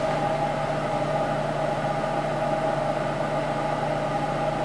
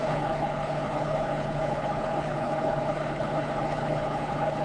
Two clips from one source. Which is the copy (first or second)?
second